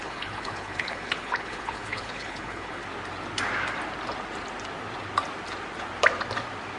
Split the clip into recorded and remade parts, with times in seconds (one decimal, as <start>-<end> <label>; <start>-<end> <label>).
0.0-2.8 remade; 2.8-6.8 recorded